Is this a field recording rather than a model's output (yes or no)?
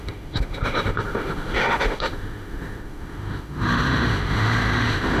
no